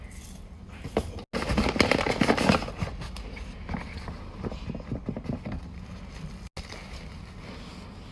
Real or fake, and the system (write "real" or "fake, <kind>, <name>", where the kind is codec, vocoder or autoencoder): real